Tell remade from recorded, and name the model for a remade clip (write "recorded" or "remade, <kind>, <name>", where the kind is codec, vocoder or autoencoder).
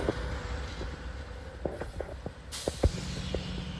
recorded